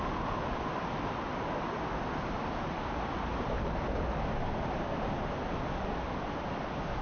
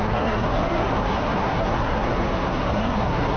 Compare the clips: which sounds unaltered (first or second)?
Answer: first